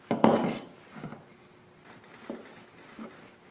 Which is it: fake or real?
real